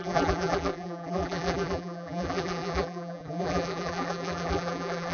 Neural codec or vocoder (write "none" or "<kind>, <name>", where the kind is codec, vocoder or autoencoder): vocoder, BigVGAN v2